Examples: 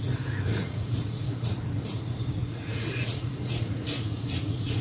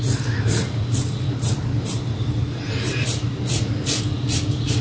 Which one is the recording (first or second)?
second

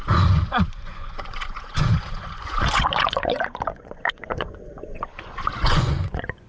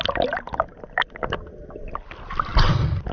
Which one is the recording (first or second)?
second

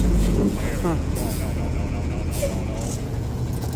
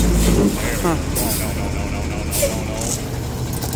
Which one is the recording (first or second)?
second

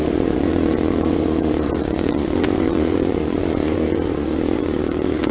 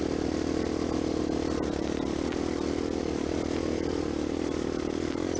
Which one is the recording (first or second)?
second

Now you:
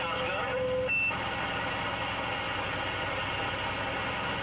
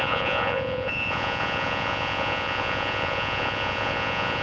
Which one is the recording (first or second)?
first